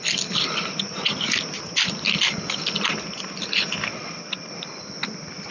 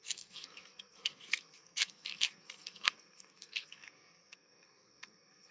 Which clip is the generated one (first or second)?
second